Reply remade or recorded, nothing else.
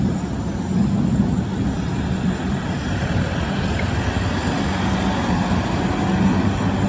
recorded